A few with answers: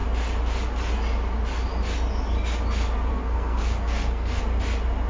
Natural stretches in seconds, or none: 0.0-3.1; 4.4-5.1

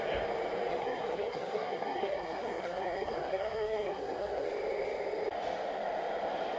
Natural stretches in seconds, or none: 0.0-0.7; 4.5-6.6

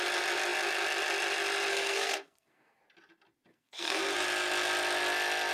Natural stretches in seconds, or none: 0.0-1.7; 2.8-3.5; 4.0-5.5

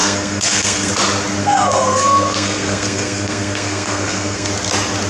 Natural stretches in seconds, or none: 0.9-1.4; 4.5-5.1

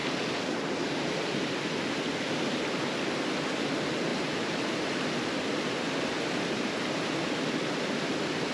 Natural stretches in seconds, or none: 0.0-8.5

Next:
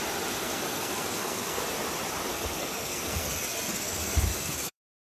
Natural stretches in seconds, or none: 0.0-0.4; 1.6-2.3